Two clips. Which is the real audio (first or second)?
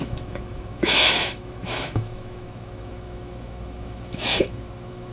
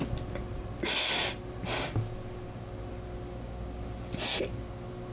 second